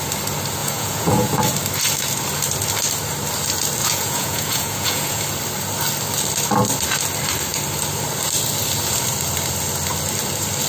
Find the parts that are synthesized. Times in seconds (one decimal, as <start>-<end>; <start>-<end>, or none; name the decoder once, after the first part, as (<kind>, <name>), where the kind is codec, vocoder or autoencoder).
0.6-1.4 (vocoder, Vocos); 3.8-5.2